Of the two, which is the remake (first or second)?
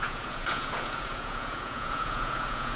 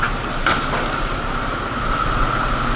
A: first